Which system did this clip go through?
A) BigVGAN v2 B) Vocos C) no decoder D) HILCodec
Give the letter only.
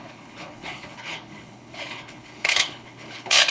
D